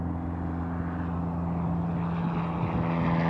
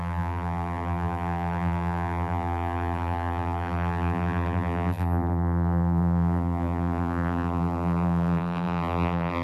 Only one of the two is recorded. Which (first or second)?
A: first